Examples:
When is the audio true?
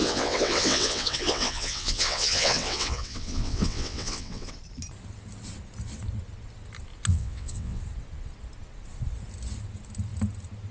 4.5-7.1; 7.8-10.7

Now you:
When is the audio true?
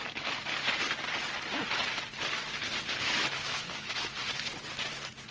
0.0-3.0; 4.2-5.3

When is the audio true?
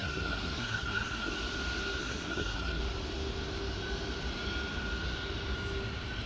1.3-2.0; 2.8-6.3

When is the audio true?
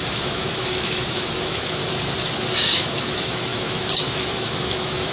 1.8-2.6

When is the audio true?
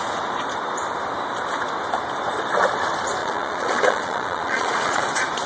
0.0-3.2; 5.0-5.5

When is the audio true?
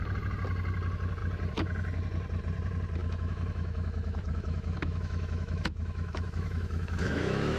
0.0-3.0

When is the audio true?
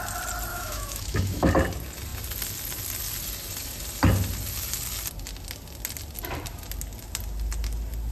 0.0-0.5; 1.5-8.1